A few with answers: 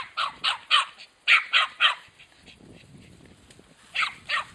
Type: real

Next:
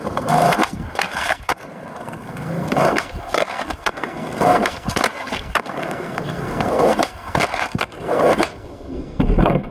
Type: fake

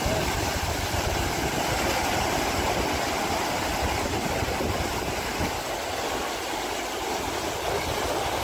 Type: real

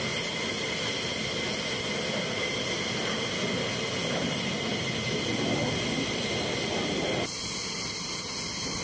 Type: real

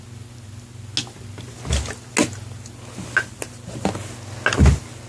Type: real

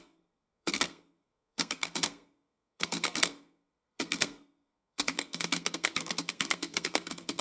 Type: fake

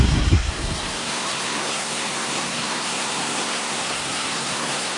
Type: fake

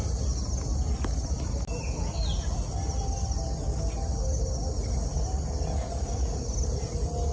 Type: real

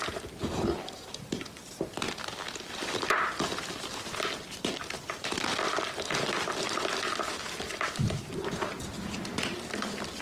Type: real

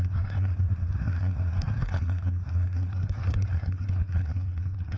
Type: fake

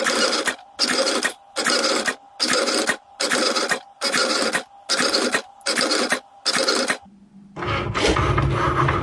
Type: real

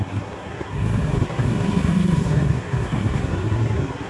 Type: fake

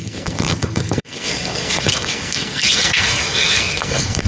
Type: fake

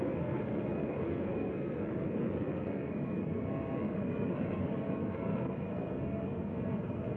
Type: fake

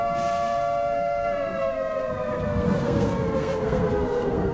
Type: fake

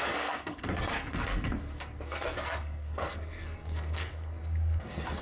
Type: fake